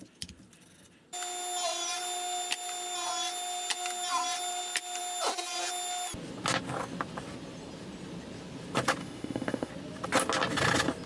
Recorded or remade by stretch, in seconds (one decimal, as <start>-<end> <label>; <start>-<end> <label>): 0.0-9.0 recorded; 9.0-9.7 remade; 9.7-11.1 recorded

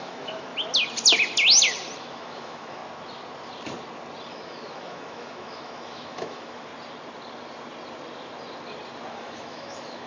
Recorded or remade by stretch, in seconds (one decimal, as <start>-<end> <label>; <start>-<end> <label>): 0.0-0.5 remade; 0.5-2.0 recorded; 2.0-2.8 remade; 2.8-4.3 recorded; 4.3-6.7 remade; 6.7-9.1 recorded; 9.1-10.1 remade

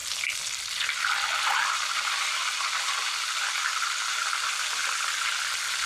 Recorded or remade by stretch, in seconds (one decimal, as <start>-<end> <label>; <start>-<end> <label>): 0.0-5.9 recorded